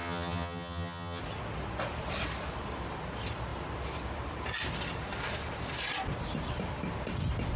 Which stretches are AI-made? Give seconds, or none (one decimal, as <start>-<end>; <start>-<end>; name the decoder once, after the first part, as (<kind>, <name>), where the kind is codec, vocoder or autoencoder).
0.0-1.2 (vocoder, HiFi-GAN)